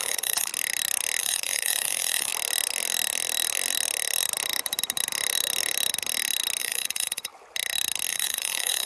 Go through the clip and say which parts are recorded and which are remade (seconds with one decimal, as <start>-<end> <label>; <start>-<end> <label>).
0.0-0.5 remade; 0.5-1.2 recorded; 1.2-2.3 remade; 2.3-6.6 recorded; 6.6-7.3 remade; 7.3-8.1 recorded; 8.1-8.9 remade